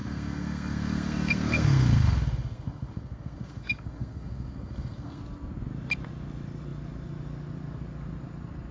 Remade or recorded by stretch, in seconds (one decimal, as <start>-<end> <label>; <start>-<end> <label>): 0.0-5.2 remade; 5.2-8.7 recorded